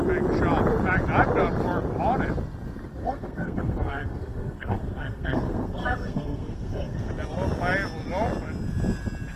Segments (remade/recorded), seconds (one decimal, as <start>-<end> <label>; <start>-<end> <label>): 0.0-3.0 recorded; 3.0-7.1 remade; 7.1-9.4 recorded